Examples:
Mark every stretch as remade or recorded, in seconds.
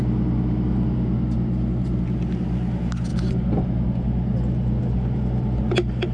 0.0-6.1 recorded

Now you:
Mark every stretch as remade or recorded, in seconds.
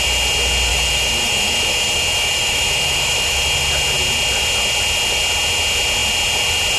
0.0-0.7 recorded; 0.7-3.6 remade; 3.6-6.8 recorded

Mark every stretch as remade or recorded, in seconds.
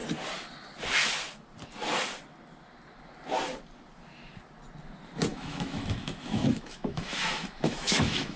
0.0-5.3 recorded; 5.3-8.4 remade